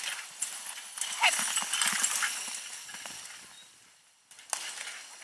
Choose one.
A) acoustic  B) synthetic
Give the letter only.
A